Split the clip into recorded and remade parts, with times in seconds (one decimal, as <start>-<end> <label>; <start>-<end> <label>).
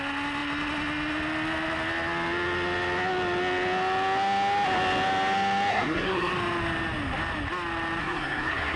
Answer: 0.0-5.7 recorded; 5.7-6.3 remade; 6.3-8.0 recorded; 8.0-8.8 remade